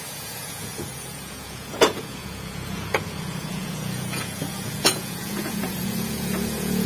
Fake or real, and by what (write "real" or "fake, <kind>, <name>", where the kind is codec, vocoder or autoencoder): fake, vocoder, Vocos